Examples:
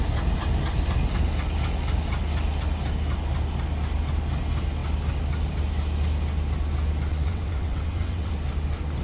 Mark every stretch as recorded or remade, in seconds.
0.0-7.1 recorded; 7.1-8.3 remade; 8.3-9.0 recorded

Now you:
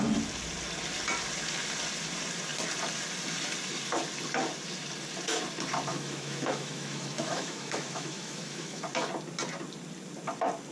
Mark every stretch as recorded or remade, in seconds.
0.0-5.9 recorded; 5.9-8.8 remade; 8.8-10.7 recorded

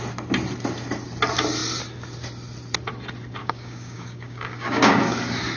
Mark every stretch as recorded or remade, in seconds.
0.0-3.4 recorded; 3.4-5.0 remade; 5.0-5.6 recorded